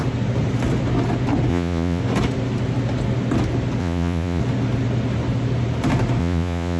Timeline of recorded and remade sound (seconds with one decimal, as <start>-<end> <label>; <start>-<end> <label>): 0.0-1.5 recorded; 1.5-2.0 remade; 2.0-3.8 recorded; 3.8-4.4 remade; 4.4-6.2 recorded; 6.2-6.8 remade